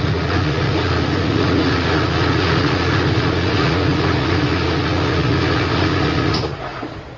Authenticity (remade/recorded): remade